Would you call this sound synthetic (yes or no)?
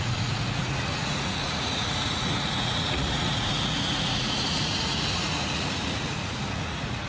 yes